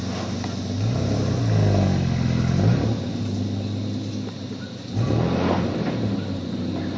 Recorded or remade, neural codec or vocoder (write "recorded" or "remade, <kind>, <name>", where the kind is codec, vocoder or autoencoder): recorded